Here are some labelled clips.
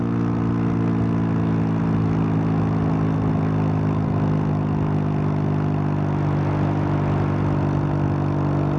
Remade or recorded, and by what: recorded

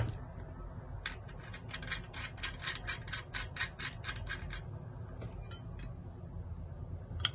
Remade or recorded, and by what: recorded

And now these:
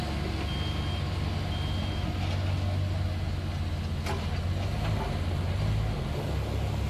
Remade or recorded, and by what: recorded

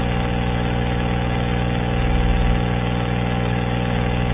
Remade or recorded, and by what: recorded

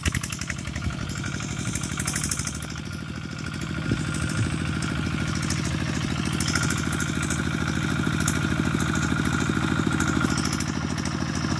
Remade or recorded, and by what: recorded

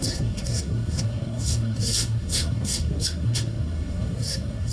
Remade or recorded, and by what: remade, codec, SNAC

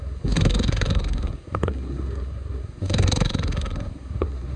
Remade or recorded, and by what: remade, codec, SNAC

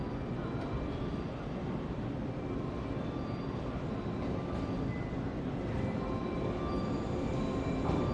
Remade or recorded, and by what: recorded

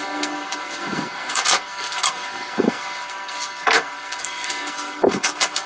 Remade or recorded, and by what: remade, codec, SNAC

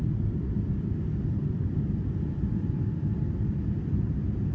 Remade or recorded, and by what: recorded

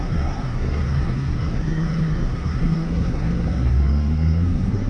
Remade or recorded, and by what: remade, codec, SNAC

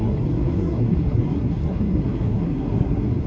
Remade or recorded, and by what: remade, codec, SNAC